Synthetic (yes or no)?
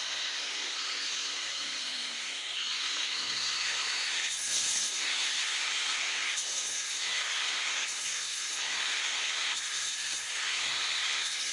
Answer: yes